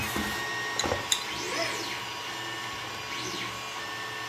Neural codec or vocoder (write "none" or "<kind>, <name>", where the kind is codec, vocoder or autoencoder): none